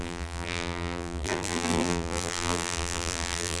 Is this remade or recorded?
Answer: remade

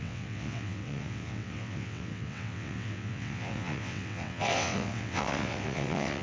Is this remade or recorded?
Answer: remade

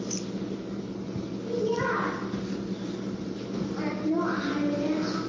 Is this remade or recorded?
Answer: recorded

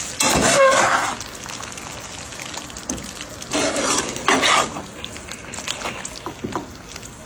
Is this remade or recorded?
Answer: recorded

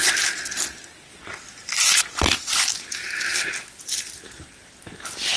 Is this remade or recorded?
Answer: recorded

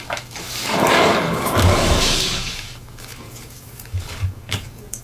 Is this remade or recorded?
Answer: remade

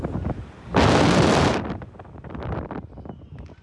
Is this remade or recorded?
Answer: recorded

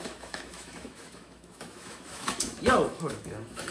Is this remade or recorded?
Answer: remade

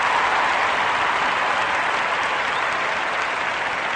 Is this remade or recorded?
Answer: recorded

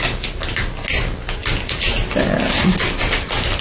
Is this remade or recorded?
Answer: recorded